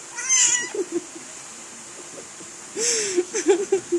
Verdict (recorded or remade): recorded